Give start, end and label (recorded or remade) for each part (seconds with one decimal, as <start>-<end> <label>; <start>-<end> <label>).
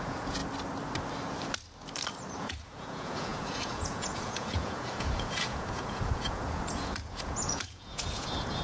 0.0-0.4 remade; 0.4-2.4 recorded; 2.4-8.6 remade